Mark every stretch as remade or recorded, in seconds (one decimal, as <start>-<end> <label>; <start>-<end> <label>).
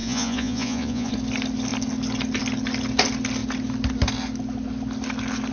0.0-1.1 remade; 1.1-5.5 recorded